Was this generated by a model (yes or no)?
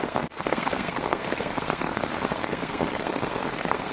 yes